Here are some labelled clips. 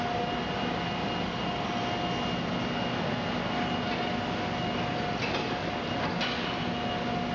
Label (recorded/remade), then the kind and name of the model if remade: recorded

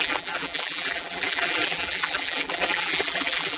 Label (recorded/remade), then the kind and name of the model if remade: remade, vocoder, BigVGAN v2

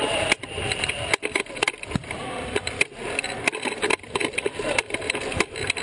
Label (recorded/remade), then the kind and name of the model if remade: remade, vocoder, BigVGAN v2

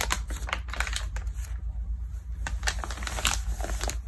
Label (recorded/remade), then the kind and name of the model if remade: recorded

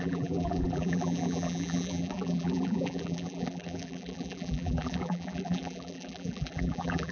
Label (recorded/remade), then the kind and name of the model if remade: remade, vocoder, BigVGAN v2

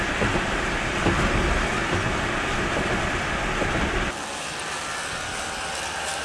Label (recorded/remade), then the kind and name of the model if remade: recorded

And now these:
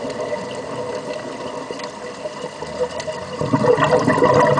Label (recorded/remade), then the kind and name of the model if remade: recorded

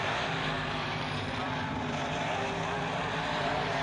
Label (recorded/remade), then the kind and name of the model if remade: remade, vocoder, BigVGAN v2